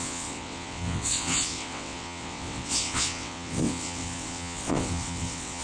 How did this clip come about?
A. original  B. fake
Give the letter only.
B